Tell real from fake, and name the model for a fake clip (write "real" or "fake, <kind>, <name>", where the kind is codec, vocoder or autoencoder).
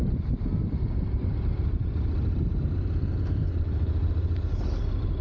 real